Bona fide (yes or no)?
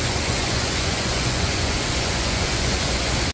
no